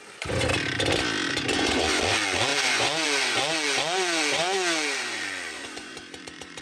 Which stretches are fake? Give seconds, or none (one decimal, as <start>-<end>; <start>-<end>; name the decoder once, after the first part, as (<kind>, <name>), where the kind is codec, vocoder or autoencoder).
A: 0.0-0.5 (vocoder, Vocos); 1.3-6.6